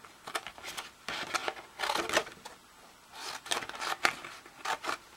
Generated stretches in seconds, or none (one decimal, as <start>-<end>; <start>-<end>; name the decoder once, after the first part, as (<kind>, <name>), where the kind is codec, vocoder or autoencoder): 0.0-1.4 (vocoder, BigVGAN v2); 4.5-5.2